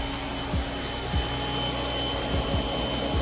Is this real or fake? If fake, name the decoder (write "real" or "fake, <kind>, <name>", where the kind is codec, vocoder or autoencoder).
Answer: real